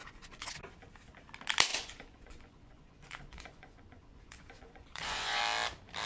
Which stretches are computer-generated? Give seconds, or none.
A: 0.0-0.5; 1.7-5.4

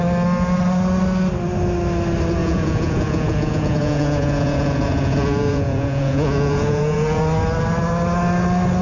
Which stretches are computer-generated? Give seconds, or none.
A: 2.4-7.2

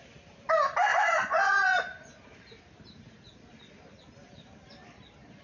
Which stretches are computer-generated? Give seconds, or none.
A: 0.9-1.8